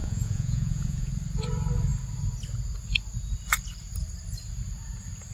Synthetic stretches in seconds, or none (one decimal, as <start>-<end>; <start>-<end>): 0.0-1.1